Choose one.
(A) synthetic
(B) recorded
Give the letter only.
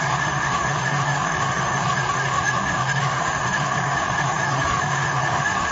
A